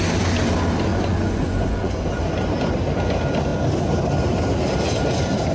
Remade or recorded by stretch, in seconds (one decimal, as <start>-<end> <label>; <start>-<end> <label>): 0.0-0.9 recorded; 0.9-2.2 remade; 2.2-5.5 recorded